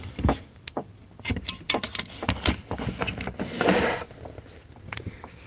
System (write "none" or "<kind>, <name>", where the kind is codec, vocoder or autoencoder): none